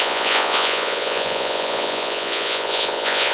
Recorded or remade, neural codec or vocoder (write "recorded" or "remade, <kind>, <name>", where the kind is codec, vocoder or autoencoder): remade, vocoder, Vocos